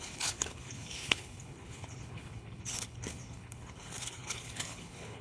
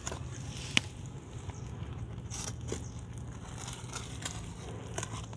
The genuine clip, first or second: second